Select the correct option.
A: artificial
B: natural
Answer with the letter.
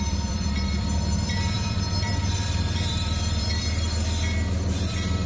A